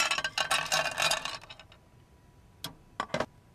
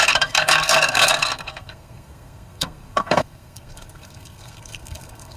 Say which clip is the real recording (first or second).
first